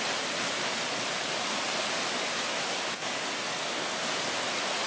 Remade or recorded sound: recorded